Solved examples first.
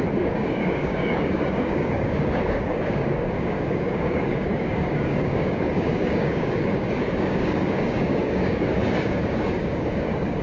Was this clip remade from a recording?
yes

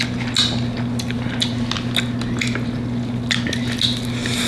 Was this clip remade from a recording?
no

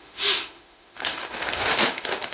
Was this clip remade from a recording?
yes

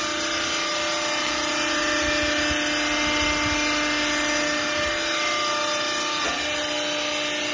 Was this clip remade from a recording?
no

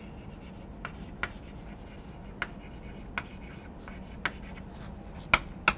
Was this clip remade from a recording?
no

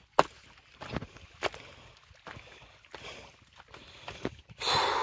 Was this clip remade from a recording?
no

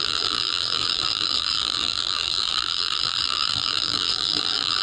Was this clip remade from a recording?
yes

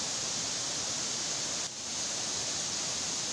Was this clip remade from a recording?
no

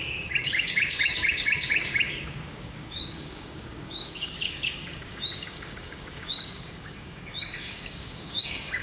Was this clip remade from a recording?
yes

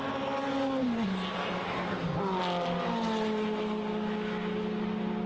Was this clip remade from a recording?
no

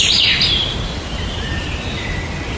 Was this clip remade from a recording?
no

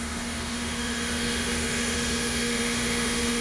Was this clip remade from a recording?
yes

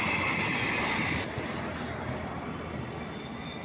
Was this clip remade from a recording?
no